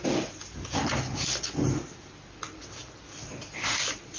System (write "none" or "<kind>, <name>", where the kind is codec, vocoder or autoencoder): none